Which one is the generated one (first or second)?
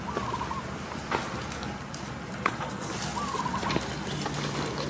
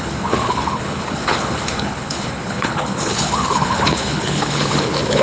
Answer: second